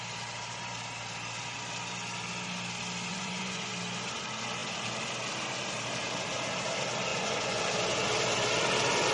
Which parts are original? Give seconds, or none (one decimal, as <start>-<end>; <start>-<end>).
0.0-3.1; 3.7-7.1; 7.6-9.1

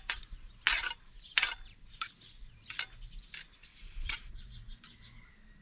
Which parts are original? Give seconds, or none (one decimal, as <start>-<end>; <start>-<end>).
0.0-0.8; 2.1-3.7; 4.3-5.6

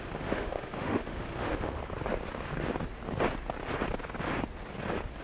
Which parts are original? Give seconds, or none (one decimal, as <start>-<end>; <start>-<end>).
1.8-5.2

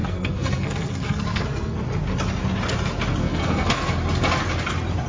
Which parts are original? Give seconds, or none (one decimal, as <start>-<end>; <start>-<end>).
1.8-3.2; 3.9-5.1

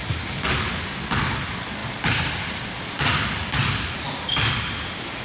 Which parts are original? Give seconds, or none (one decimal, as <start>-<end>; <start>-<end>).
0.0-5.2

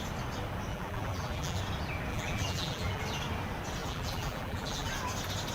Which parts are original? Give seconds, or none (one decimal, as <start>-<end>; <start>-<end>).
0.0-0.7; 1.6-2.1; 3.0-3.8; 4.9-5.5

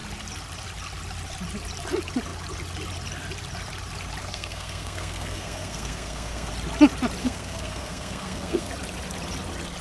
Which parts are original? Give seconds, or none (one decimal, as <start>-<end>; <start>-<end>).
0.0-4.2; 6.5-7.2; 8.7-9.8